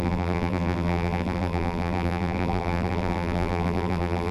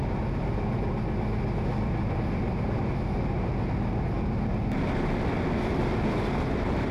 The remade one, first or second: first